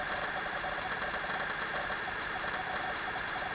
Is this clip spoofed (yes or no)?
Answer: no